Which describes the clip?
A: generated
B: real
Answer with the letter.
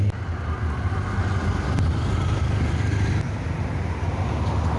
B